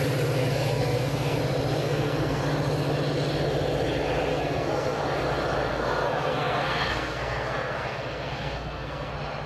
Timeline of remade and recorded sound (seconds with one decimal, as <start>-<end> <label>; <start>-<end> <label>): 0.0-0.4 recorded; 0.4-1.4 remade; 1.4-1.8 recorded; 1.8-2.4 remade; 2.4-4.3 recorded; 4.3-5.0 remade; 5.0-5.7 recorded; 5.7-9.1 remade; 9.1-9.5 recorded